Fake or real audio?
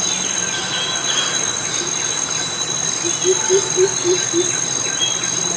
real